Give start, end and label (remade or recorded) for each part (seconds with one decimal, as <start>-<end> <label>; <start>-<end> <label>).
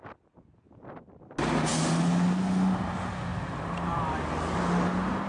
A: 0.0-5.3 recorded